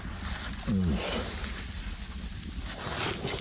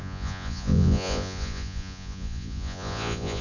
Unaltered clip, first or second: first